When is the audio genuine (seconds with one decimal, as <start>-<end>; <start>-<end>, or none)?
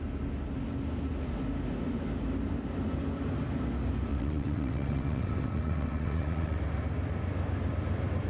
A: 0.0-4.1; 6.6-8.3